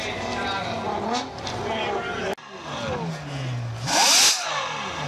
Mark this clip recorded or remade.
recorded